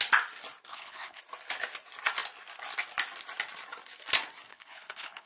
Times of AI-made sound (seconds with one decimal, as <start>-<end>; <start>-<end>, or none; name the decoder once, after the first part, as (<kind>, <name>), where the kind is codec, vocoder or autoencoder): 0.7-1.2 (codec, HILCodec); 4.5-5.3